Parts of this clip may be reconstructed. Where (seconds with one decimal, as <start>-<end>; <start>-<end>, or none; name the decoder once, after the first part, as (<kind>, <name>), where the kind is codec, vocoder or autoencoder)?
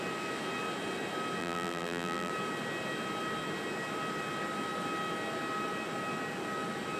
1.4-2.3 (vocoder, BigVGAN v2)